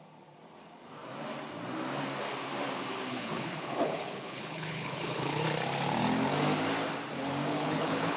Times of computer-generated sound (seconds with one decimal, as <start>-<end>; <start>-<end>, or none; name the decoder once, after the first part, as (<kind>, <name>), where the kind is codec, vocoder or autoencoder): 3.1-5.4 (codec, HILCodec); 7.5-8.2